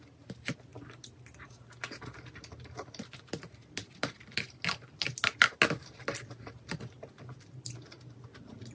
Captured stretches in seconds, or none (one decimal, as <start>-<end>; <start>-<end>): 0.0-8.7